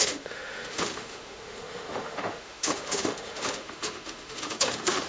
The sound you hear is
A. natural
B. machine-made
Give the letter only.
B